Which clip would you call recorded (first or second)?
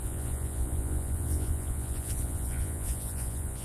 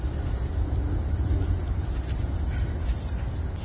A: second